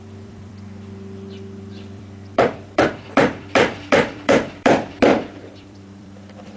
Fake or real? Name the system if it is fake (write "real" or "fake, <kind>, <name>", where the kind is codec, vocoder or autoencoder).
fake, vocoder, BigVGAN v2